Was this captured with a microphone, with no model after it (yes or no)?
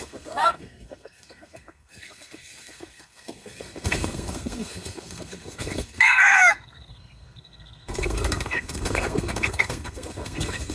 no